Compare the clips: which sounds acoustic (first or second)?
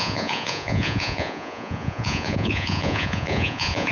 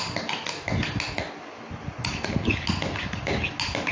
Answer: second